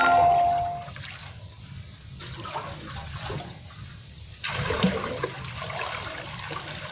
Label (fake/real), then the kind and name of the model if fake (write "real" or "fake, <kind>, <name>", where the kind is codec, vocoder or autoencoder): real